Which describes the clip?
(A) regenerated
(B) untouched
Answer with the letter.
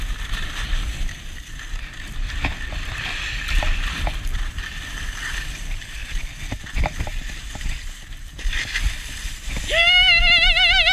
B